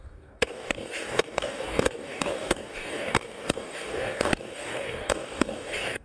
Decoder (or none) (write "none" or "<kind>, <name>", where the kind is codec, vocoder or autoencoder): codec, DAC